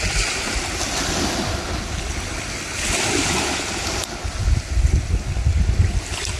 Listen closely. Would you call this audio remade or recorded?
recorded